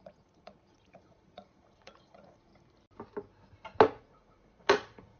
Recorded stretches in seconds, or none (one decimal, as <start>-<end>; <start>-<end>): 2.5-4.0